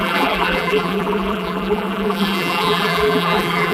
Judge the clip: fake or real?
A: fake